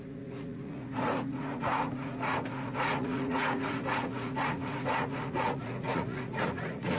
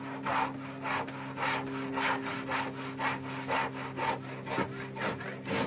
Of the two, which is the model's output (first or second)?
first